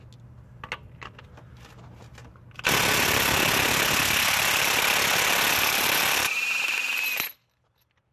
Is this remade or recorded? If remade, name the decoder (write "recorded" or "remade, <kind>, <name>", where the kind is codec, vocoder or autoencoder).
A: recorded